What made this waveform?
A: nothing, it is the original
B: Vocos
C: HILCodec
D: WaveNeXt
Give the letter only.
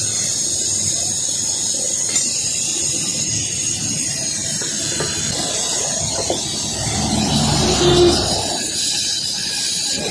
A